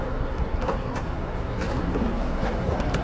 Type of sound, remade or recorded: remade